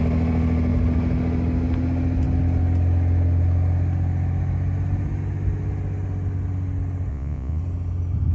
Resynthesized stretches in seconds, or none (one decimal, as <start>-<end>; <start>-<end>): 7.1-7.6

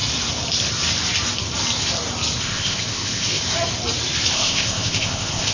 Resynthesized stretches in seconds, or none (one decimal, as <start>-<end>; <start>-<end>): 2.4-3.4; 4.3-5.5